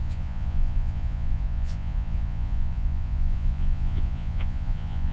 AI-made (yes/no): yes